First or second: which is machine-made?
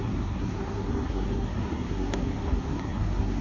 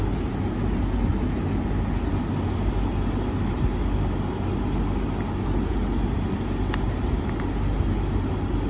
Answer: first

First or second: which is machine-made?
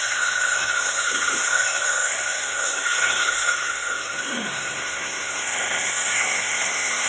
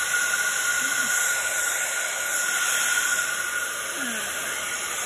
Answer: first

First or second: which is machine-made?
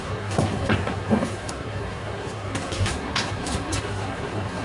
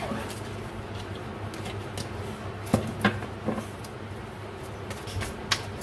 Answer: first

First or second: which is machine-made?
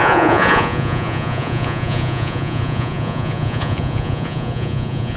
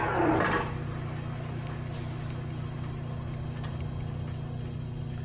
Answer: first